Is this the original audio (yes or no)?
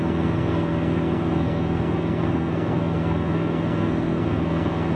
no